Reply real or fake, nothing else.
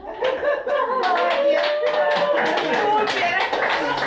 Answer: real